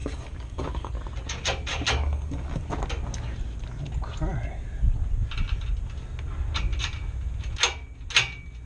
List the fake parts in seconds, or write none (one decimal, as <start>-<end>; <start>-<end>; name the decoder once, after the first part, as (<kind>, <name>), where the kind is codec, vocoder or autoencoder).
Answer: 0.0-0.9 (codec, DAC); 1.7-2.6